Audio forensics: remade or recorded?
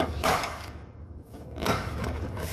remade